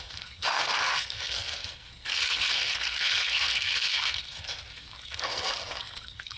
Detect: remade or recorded remade